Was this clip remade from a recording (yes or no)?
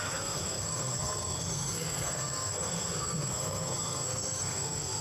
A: yes